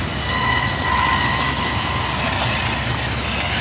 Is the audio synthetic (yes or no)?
no